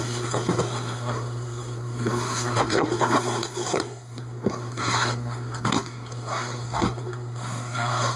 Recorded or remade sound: remade